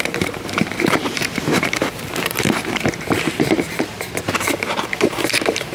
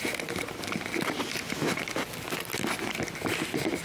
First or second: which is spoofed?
first